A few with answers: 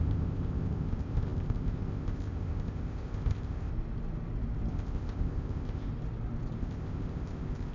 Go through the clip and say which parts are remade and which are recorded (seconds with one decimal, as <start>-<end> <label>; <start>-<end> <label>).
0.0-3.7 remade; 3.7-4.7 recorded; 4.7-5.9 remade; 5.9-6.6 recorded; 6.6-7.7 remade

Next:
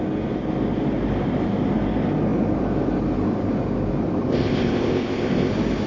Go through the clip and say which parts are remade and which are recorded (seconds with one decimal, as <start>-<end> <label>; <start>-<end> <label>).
0.0-4.3 recorded; 4.3-5.5 remade; 5.5-5.9 recorded

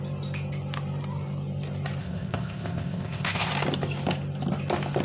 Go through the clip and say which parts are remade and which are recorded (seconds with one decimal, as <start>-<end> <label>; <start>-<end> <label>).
0.0-2.0 recorded; 2.0-3.5 remade; 3.5-5.0 recorded